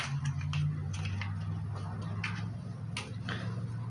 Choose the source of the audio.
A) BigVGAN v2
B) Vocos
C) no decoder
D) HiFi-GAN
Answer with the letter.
C